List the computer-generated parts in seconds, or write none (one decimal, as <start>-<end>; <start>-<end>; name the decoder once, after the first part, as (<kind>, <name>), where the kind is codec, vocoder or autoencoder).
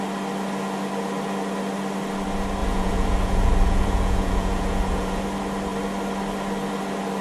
2.6-5.2 (vocoder, Vocos)